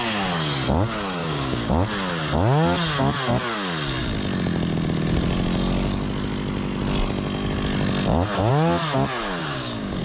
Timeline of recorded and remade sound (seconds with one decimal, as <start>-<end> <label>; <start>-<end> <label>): 0.0-1.2 recorded; 1.2-1.7 remade; 1.7-9.4 recorded; 9.4-10.0 remade

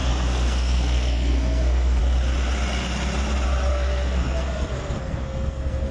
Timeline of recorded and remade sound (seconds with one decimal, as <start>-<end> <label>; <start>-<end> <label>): 0.0-2.0 remade; 2.0-3.7 recorded; 3.7-5.9 remade

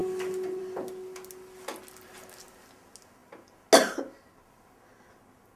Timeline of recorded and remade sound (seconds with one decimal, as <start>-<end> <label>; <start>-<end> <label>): 0.0-5.6 recorded

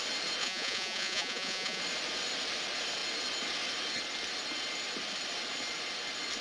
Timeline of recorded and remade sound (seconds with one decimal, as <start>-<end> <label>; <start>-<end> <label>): 0.0-0.4 recorded; 0.4-1.8 remade; 1.8-6.4 recorded

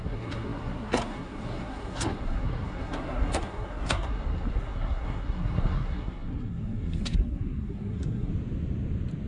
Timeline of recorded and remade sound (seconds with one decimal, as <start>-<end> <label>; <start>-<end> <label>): 0.0-8.3 remade; 8.3-9.3 recorded

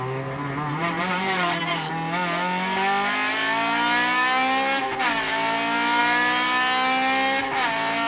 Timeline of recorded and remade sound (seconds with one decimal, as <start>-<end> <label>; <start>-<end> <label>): 0.0-0.7 recorded; 0.7-1.9 remade; 1.9-8.1 recorded

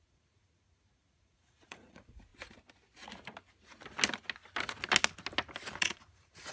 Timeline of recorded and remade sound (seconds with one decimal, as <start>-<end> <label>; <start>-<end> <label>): 0.0-2.3 remade; 2.3-5.8 recorded; 5.8-6.5 remade

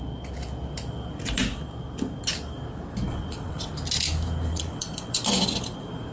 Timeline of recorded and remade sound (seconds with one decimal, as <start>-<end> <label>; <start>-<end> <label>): 0.0-3.1 recorded; 3.1-3.7 remade; 3.7-4.5 recorded; 4.5-5.2 remade; 5.2-6.1 recorded